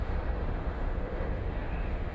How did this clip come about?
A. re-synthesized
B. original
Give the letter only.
A